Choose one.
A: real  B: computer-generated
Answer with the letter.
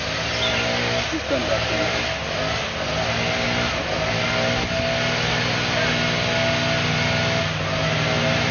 A